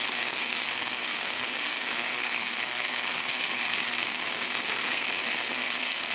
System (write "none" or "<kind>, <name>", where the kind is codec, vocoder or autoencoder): codec, SNAC